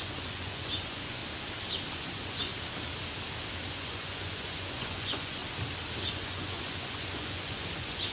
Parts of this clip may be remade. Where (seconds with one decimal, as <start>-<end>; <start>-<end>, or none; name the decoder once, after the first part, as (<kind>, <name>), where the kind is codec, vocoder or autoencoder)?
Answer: 0.0-1.2 (vocoder, Vocos); 1.9-2.5; 3.7-5.4; 6.1-8.1